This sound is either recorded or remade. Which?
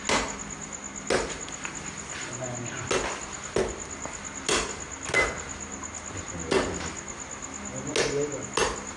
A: recorded